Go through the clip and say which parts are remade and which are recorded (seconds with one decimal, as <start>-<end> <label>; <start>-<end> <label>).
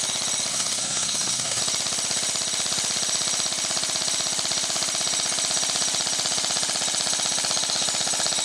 0.0-0.5 recorded; 0.5-1.6 remade; 1.6-8.4 recorded